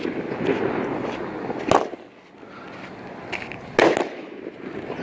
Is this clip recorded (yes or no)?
yes